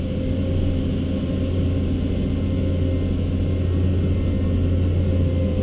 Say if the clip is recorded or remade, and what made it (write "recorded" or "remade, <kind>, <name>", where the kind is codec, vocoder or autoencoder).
recorded